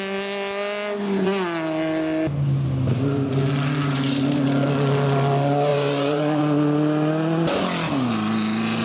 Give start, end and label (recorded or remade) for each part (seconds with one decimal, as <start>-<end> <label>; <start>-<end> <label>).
0.0-5.7 recorded; 5.7-6.4 remade; 6.4-8.8 recorded